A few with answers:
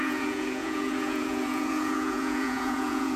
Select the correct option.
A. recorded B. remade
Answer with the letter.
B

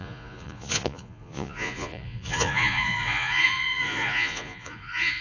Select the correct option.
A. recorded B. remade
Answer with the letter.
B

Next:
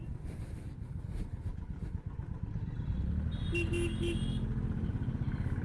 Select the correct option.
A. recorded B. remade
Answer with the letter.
A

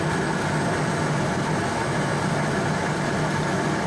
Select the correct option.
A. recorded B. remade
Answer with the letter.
A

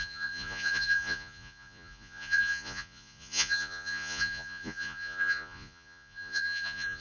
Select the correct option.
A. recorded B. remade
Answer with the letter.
B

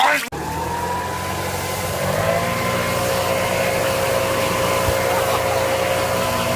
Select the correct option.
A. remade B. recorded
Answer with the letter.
B